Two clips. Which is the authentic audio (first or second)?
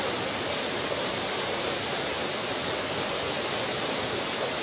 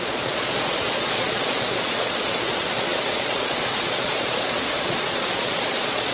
first